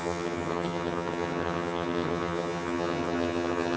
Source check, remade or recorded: remade